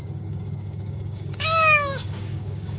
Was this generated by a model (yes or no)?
yes